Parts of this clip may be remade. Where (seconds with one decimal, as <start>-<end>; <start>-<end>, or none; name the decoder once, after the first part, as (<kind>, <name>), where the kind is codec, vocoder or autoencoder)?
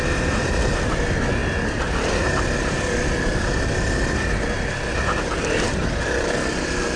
none